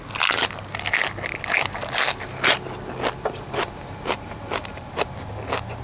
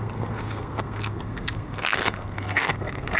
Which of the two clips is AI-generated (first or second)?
second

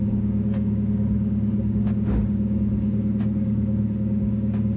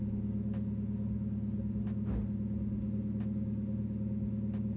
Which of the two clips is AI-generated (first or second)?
first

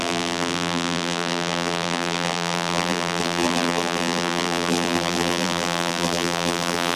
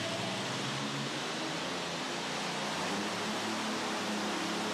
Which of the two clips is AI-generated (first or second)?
first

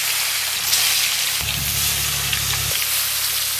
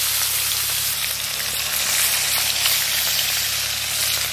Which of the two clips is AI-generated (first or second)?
first